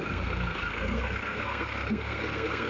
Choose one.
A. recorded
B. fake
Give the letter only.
B